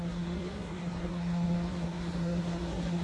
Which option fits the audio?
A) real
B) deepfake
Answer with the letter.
B